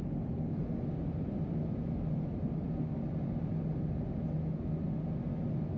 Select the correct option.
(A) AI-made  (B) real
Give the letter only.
B